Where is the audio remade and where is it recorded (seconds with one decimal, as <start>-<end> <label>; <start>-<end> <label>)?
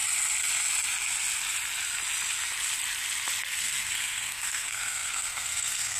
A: 0.0-3.6 recorded; 3.6-6.0 remade